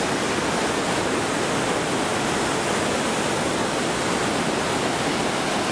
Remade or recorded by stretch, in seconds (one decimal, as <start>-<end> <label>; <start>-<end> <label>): 0.0-5.7 recorded